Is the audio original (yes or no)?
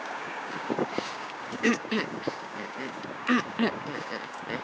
no